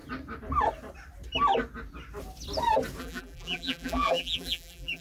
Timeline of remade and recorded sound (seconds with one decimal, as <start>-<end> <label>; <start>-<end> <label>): 0.0-3.0 recorded; 3.0-5.0 remade